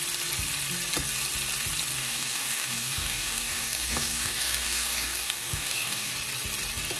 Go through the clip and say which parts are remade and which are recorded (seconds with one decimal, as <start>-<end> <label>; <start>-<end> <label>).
0.0-1.9 recorded; 1.9-6.1 remade; 6.1-7.0 recorded